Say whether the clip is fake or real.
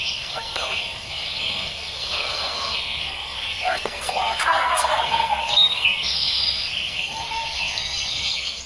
fake